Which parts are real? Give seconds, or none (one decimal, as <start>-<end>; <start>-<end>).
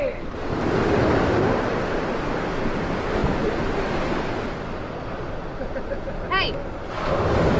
0.0-7.6